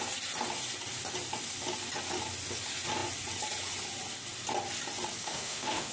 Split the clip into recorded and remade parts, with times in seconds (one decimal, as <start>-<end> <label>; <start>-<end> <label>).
0.0-5.2 recorded; 5.2-5.9 remade